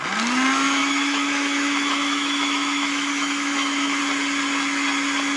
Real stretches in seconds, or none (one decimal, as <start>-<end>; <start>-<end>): 0.0-0.8; 4.0-5.4